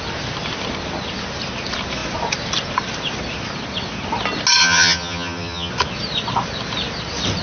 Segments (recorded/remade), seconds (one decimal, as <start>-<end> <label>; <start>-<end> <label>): 0.0-4.6 recorded; 4.6-5.7 remade; 5.7-7.4 recorded